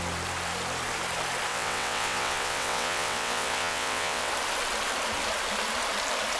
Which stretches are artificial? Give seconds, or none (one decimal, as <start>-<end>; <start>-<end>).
1.5-4.3